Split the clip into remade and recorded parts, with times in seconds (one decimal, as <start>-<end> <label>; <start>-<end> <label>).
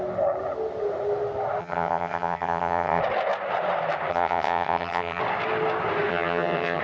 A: 0.0-1.6 recorded; 1.6-3.0 remade; 3.0-4.1 recorded; 4.1-5.2 remade; 5.2-6.1 recorded; 6.1-6.8 remade